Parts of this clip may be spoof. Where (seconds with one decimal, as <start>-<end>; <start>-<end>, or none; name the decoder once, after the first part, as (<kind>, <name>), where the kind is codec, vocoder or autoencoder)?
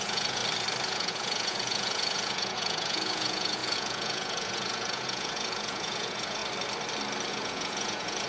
0.0-0.4 (vocoder, Vocos); 0.9-6.4; 7.3-8.3